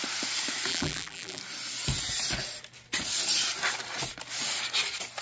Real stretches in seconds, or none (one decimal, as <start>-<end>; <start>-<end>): 0.0-0.7; 1.4-5.2